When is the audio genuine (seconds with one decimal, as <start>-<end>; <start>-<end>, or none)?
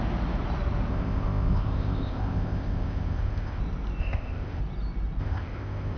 0.0-0.9; 3.6-4.0; 4.6-5.2